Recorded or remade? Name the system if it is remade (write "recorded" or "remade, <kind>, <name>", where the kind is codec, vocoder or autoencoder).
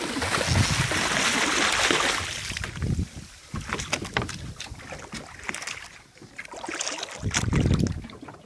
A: recorded